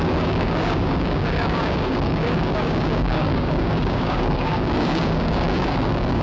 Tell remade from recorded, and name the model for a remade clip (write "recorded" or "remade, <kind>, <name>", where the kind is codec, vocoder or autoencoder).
remade, codec, DAC